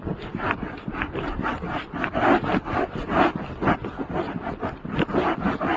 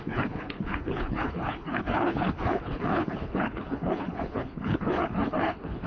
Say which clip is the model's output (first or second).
second